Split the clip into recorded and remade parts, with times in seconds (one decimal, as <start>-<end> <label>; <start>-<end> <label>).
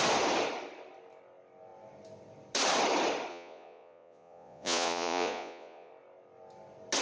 0.0-3.3 recorded; 3.3-5.9 remade; 5.9-7.0 recorded